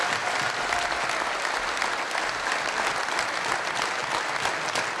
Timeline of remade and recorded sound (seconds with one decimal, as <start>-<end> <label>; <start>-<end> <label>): 0.0-5.0 recorded

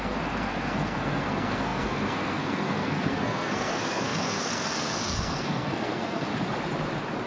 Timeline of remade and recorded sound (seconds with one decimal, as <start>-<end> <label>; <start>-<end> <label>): 0.0-6.3 remade; 6.3-7.3 recorded